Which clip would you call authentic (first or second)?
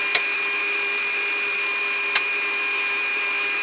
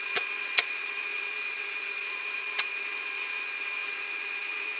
first